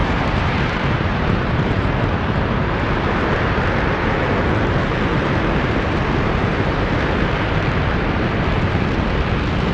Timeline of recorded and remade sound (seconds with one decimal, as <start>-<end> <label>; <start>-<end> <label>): 0.0-1.9 remade; 1.9-9.7 recorded